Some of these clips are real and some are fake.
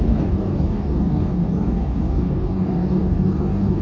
fake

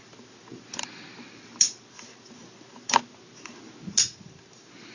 real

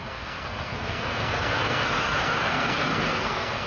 fake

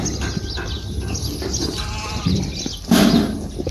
real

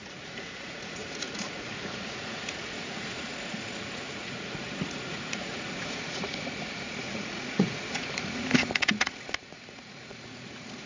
fake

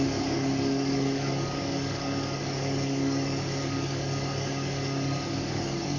fake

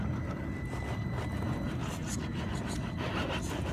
real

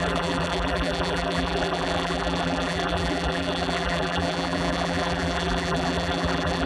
fake